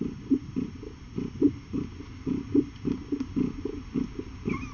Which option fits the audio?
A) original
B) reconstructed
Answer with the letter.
A